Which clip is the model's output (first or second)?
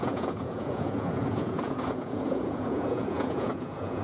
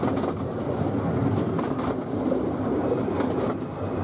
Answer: first